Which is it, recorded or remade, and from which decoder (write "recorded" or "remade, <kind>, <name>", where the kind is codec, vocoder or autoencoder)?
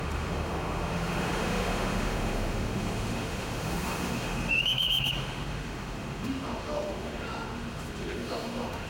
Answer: remade, autoencoder, DAC-VAE